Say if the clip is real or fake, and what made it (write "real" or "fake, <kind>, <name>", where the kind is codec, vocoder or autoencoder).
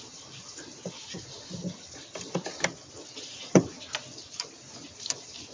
real